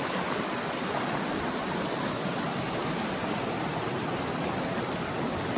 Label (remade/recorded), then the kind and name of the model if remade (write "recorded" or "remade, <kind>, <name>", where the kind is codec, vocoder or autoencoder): recorded